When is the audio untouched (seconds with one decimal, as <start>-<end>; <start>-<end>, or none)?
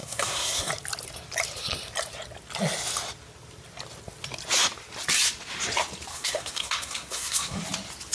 0.7-6.1; 7.6-8.1